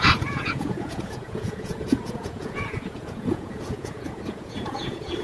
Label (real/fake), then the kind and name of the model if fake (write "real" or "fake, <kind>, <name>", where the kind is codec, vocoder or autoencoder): fake, vocoder, Vocos